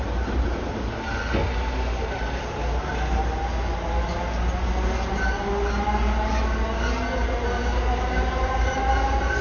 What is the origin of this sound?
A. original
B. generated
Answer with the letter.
A